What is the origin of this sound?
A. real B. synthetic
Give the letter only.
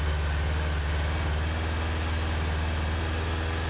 A